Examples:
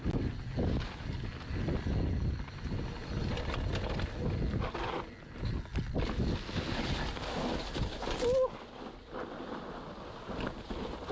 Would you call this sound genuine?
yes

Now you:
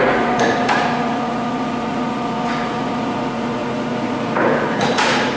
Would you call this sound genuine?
no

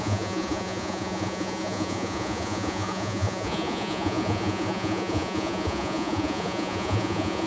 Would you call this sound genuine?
no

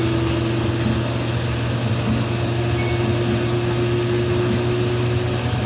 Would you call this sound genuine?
yes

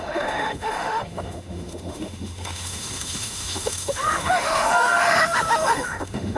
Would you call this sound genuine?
no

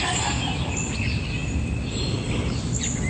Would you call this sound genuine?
yes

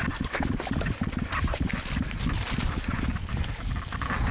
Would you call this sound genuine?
yes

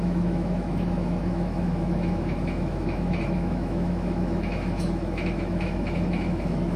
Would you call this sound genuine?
no